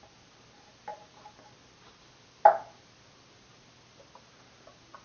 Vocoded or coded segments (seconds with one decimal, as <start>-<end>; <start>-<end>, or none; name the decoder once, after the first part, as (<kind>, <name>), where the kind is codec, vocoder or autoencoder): none